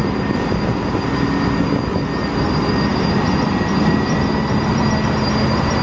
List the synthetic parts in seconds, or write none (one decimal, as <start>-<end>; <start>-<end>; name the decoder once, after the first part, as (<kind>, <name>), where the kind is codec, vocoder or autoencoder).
none